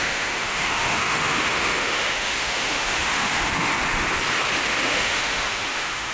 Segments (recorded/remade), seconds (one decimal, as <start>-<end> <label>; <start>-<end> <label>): 0.0-3.7 remade; 3.7-4.6 recorded; 4.6-6.1 remade